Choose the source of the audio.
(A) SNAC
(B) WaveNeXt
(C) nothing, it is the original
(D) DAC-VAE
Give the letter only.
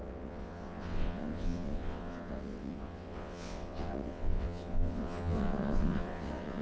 B